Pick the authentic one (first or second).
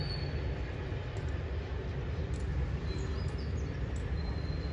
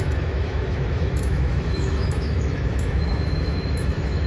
first